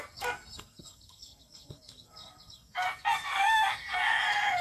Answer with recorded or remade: remade